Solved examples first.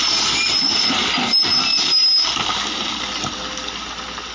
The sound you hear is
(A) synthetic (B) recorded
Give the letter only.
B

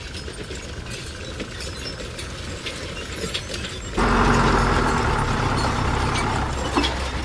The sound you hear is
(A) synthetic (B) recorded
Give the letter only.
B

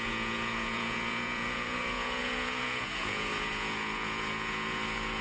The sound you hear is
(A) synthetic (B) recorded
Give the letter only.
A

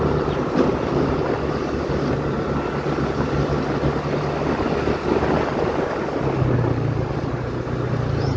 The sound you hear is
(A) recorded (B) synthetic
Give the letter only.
A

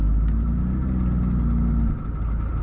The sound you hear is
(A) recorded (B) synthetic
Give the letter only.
A